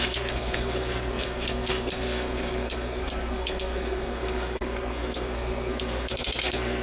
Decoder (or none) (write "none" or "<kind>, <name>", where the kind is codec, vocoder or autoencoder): codec, SNAC